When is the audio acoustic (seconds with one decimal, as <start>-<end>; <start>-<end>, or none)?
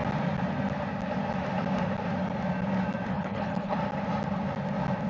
0.0-3.1; 3.8-5.1